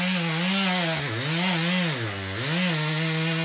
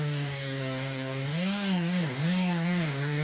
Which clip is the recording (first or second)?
first